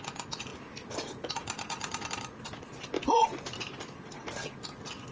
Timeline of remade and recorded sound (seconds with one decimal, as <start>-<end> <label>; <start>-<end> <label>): 0.0-5.1 recorded